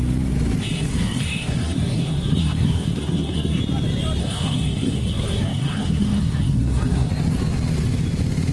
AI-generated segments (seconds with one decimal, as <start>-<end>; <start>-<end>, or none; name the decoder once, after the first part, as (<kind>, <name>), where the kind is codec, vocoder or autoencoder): 0.6-3.6 (codec, SNAC); 4.2-7.1

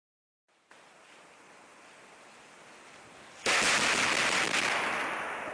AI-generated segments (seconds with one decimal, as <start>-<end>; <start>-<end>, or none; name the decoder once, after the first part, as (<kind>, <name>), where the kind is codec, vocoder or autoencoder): none